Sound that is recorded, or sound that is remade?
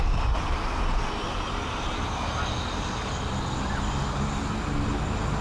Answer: recorded